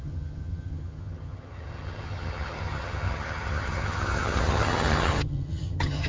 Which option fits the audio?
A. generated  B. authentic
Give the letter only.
A